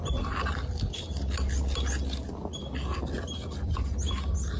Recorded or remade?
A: recorded